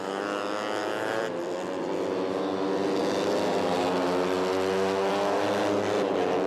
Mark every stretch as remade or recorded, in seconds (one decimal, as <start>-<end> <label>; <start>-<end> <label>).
0.0-0.8 recorded; 0.8-1.9 remade; 1.9-6.5 recorded